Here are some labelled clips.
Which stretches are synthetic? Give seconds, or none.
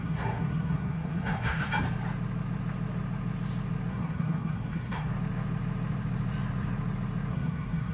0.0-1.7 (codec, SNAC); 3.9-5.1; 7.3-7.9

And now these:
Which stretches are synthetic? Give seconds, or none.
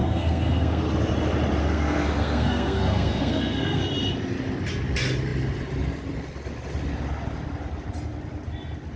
0.0-0.8 (codec, SNAC); 1.6-3.8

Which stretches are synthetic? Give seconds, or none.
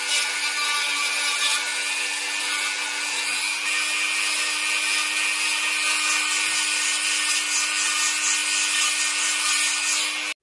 none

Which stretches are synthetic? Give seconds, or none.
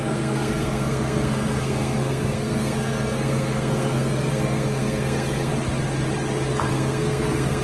0.0-5.5 (codec, SNAC); 6.7-7.6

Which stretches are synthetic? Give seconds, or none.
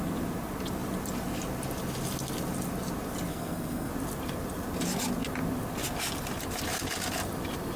3.3-3.9 (codec, SNAC)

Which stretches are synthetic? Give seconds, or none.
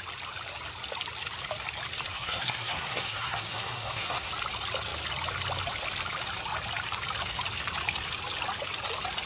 2.1-4.3 (codec, SNAC)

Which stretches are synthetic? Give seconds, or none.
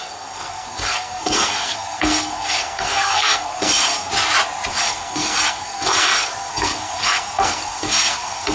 0.0-4.1 (codec, SNAC); 4.7-8.5